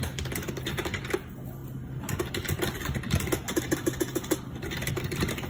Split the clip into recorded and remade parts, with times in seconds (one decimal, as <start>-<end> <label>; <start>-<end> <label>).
0.0-5.5 recorded